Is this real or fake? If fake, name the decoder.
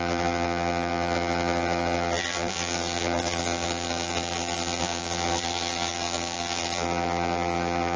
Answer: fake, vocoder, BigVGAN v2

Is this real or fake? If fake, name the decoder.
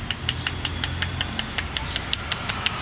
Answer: real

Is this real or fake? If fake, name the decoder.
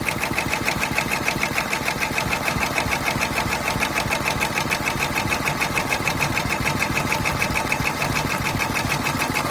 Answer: real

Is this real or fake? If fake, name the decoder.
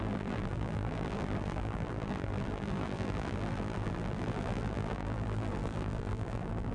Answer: fake, vocoder, BigVGAN v2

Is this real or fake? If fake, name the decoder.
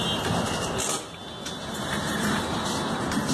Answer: real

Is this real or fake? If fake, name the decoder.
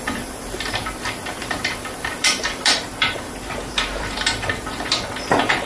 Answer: fake, vocoder, BigVGAN v2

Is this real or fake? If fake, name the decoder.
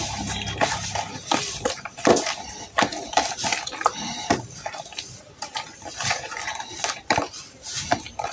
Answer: real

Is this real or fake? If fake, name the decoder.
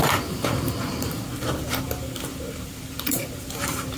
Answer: fake, vocoder, BigVGAN v2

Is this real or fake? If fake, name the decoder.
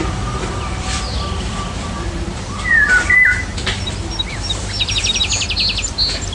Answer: fake, vocoder, BigVGAN v2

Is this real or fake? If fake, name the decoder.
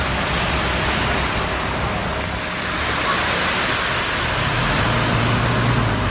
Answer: real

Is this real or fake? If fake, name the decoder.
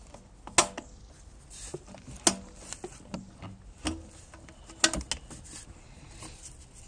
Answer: real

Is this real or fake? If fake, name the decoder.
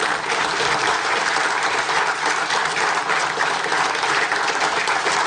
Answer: fake, vocoder, BigVGAN v2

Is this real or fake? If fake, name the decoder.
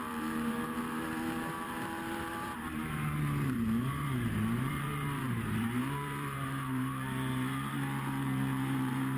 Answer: fake, vocoder, BigVGAN v2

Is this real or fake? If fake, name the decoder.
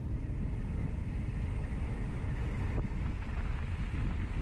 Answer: real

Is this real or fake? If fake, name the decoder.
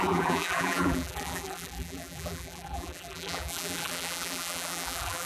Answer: fake, vocoder, BigVGAN v2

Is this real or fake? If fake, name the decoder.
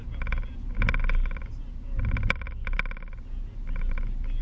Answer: real